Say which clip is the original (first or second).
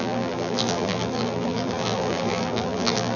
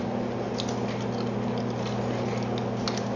second